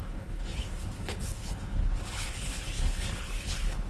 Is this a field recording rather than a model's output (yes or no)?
no